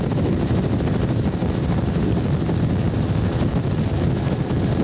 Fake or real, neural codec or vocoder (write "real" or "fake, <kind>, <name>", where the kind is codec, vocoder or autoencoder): real